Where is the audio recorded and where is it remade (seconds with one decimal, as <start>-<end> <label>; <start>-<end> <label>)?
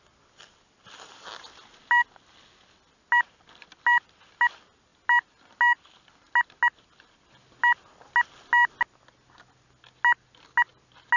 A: 0.0-11.2 recorded